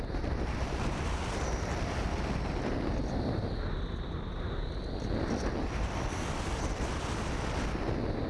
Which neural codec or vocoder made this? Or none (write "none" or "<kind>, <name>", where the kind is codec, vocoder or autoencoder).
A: none